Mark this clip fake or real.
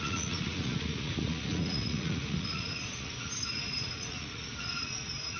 fake